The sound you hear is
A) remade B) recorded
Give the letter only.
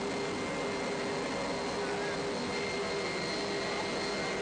B